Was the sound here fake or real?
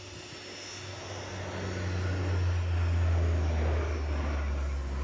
real